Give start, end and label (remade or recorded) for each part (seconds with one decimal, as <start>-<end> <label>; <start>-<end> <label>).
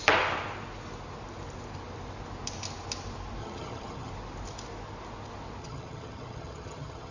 0.0-3.4 recorded; 3.4-4.1 remade; 4.1-5.6 recorded; 5.6-7.1 remade